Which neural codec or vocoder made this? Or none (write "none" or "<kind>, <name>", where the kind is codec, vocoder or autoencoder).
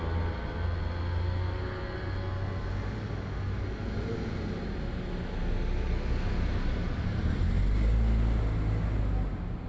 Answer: none